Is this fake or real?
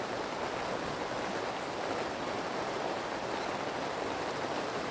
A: fake